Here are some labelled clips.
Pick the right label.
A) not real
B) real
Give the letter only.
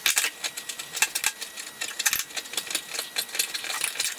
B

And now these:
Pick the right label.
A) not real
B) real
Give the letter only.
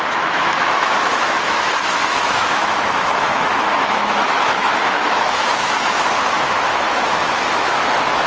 A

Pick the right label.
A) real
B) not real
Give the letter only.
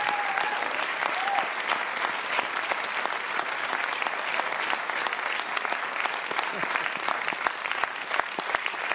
A